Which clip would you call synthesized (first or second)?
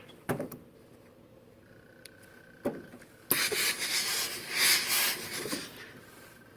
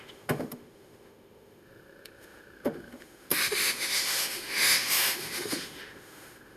second